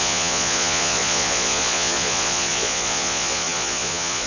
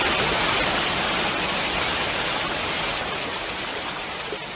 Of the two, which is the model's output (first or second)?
first